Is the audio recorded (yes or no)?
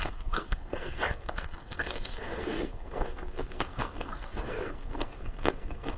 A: no